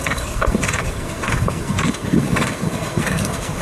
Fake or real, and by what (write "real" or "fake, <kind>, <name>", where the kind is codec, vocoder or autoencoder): fake, codec, SNAC